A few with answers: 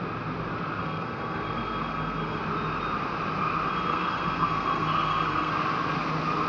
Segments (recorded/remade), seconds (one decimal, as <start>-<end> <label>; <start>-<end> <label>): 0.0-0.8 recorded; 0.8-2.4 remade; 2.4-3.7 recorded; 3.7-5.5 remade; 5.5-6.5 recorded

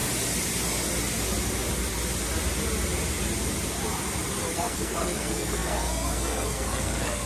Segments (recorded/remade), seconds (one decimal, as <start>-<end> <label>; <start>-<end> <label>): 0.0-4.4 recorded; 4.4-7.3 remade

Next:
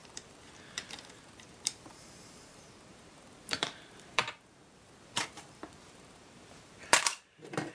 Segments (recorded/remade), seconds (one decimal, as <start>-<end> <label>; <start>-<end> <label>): 0.0-7.7 remade